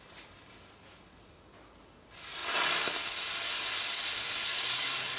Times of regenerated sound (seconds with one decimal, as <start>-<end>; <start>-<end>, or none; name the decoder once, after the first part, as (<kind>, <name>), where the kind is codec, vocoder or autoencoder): 4.5-5.2 (codec, DAC)